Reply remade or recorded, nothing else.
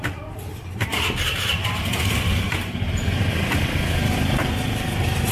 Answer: remade